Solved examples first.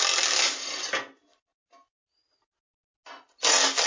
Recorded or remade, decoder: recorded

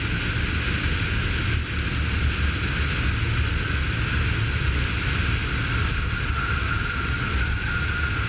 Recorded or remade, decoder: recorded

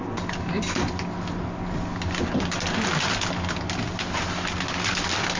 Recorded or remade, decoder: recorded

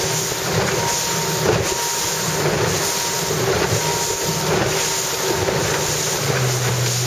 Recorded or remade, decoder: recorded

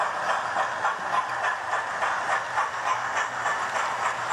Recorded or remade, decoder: recorded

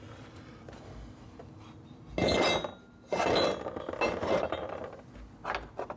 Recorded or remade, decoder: recorded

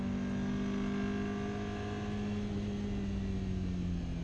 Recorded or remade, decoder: recorded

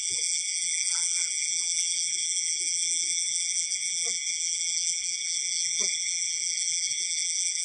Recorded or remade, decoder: remade, vocoder, BigVGAN v2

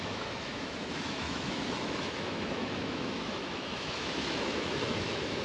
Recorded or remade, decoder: remade, autoencoder, DAC-VAE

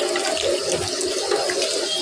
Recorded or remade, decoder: recorded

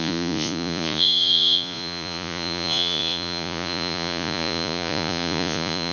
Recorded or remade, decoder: remade, vocoder, Vocos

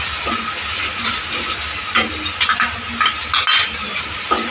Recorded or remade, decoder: recorded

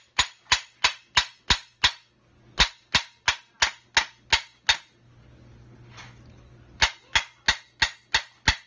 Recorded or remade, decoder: recorded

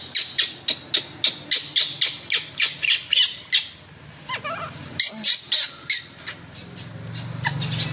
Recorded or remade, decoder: recorded